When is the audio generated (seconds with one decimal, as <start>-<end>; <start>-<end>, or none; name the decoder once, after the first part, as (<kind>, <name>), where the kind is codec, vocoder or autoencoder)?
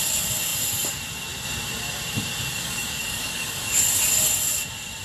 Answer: 2.5-3.7 (codec, DAC)